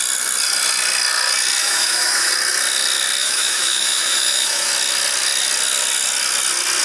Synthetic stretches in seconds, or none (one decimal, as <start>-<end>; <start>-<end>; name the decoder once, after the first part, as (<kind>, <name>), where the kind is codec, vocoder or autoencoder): 1.6-2.3 (autoencoder, DAC-VAE); 3.2-4.7